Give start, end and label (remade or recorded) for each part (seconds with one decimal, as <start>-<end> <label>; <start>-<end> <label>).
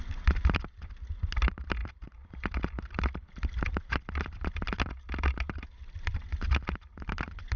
0.0-1.8 recorded; 1.8-4.9 remade; 4.9-6.1 recorded; 6.1-6.8 remade; 6.8-7.6 recorded